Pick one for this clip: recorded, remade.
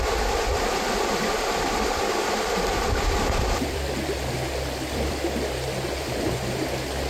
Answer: remade